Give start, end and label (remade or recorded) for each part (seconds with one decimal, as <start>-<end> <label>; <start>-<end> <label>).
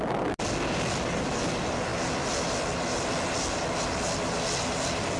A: 0.0-5.2 recorded